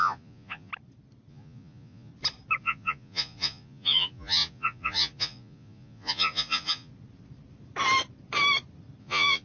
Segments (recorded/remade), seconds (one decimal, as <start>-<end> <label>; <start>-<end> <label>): 0.0-0.7 remade; 0.7-1.3 recorded; 1.3-2.1 remade; 2.1-2.6 recorded; 2.6-6.9 remade; 6.9-9.0 recorded; 9.0-9.4 remade